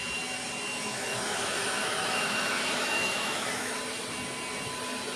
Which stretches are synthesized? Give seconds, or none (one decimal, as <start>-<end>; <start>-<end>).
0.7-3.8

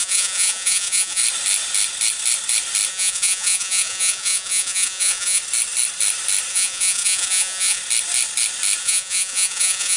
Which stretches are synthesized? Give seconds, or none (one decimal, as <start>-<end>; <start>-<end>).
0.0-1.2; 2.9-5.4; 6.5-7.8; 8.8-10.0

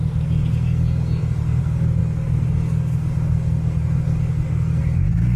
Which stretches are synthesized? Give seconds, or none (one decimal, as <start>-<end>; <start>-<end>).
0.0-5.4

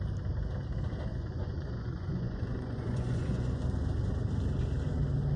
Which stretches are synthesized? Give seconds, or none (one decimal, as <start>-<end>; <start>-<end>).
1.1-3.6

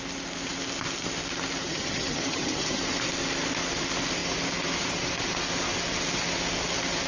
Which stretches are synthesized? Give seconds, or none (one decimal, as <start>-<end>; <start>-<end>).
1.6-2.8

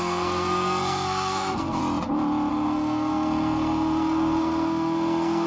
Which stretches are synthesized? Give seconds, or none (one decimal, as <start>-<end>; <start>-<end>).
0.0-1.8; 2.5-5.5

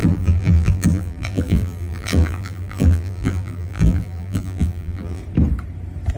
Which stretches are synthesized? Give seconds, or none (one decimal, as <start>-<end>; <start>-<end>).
0.0-5.2

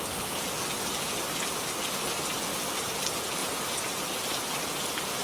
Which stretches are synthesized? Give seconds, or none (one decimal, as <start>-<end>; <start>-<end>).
3.4-4.0